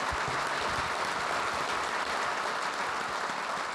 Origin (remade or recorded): recorded